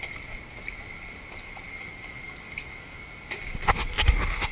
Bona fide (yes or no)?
yes